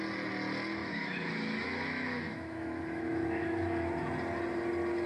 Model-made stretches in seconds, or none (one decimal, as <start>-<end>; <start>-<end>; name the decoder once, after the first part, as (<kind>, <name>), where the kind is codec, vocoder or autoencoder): 0.8-3.9 (autoencoder, DAC-VAE)